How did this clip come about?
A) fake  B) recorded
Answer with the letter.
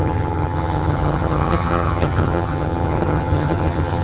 A